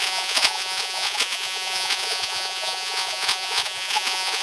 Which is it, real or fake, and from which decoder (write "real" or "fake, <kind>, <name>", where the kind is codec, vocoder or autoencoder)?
fake, vocoder, Vocos